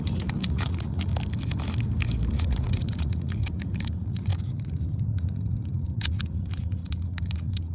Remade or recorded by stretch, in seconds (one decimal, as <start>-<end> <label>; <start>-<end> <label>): 0.0-1.1 remade; 1.1-2.3 recorded; 2.3-7.7 remade